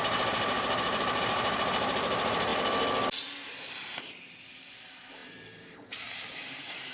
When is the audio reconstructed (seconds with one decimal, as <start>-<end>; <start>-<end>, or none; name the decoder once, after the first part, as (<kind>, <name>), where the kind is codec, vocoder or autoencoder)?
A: 0.0-2.5 (vocoder, BigVGAN v2); 3.6-6.9